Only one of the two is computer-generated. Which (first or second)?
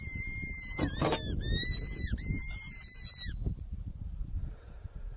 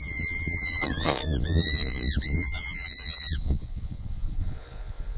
second